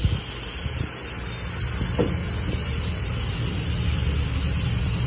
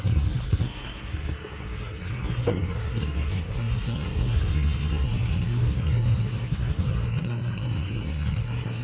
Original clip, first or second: first